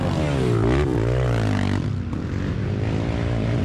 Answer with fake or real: real